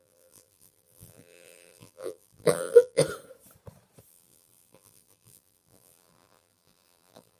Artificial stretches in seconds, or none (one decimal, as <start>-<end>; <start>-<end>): 0.0-3.0; 4.1-7.4